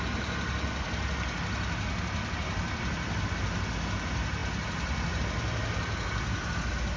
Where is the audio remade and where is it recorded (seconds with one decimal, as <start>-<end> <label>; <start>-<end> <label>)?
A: 0.0-7.0 recorded